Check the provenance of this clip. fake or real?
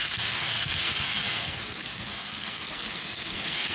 fake